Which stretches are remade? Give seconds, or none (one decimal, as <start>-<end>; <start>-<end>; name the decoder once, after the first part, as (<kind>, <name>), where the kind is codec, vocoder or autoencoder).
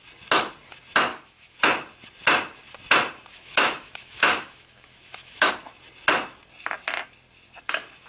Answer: 1.1-1.6 (autoencoder, DAC-VAE); 3.3-5.5